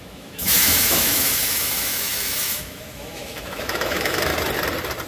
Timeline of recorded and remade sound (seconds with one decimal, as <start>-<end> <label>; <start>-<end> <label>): 0.0-4.3 remade; 4.3-5.1 recorded